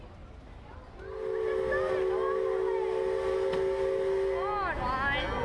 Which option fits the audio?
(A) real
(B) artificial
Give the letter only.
A